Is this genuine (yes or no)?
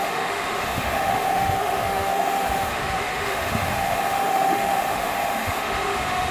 no